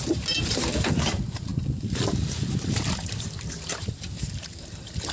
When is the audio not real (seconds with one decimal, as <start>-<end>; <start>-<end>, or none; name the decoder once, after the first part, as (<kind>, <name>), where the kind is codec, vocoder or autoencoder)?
0.0-1.5 (vocoder, BigVGAN v2); 3.8-5.1